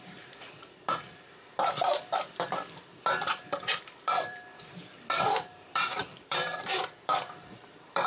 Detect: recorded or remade remade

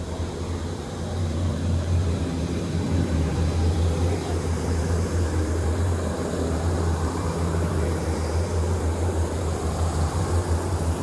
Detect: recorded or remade remade